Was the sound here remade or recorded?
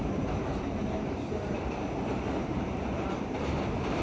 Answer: remade